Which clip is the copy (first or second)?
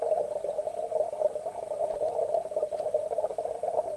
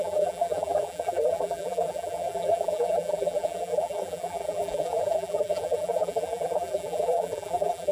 second